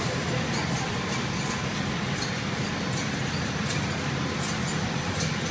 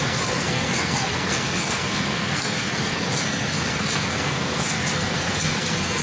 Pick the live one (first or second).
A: first